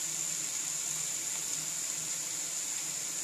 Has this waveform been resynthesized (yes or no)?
no